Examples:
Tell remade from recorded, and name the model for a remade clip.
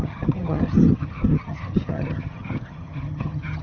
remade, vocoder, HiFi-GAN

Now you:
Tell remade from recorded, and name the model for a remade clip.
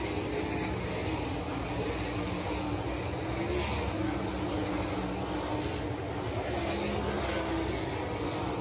recorded